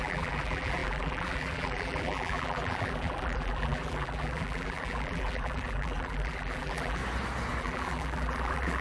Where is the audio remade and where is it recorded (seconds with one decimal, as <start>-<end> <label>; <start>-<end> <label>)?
0.0-7.0 remade; 7.0-7.6 recorded; 7.6-8.8 remade